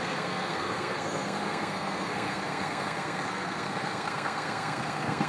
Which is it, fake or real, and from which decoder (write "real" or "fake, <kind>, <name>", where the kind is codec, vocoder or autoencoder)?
fake, codec, SNAC